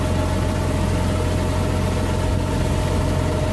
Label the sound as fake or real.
real